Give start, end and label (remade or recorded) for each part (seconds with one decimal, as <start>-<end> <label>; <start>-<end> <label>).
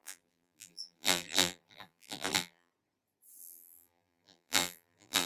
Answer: 0.0-2.7 remade; 2.7-3.4 recorded; 3.4-5.3 remade